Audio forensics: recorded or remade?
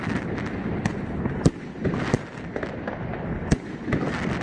recorded